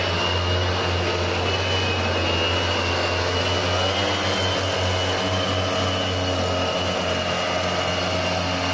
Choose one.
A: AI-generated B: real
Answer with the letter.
B